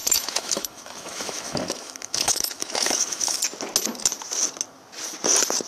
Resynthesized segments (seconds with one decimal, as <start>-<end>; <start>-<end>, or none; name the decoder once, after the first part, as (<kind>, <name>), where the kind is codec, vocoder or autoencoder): 0.0-3.4 (autoencoder, DAC-VAE)